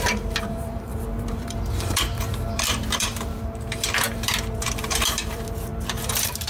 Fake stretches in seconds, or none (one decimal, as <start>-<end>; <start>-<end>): 0.0-6.5